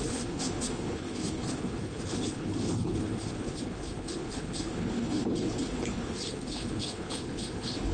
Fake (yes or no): yes